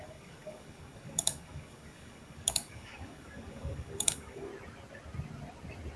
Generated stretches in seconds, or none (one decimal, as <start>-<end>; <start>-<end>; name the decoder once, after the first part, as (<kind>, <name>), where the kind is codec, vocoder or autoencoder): 0.0-4.5 (codec, DAC)

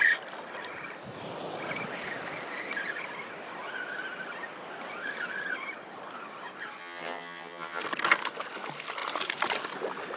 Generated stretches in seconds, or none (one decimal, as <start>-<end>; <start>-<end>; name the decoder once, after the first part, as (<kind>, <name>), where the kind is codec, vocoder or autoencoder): 6.8-7.8 (vocoder, HiFi-GAN)

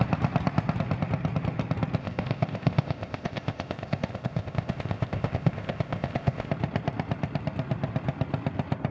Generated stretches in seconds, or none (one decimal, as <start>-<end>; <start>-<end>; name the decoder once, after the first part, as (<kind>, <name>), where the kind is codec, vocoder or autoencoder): 2.0-6.5 (codec, ZipCodec)

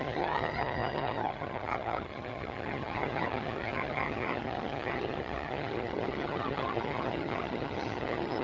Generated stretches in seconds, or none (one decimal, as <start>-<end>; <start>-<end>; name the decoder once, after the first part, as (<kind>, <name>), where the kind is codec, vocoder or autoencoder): 0.0-8.4 (vocoder, HiFi-GAN)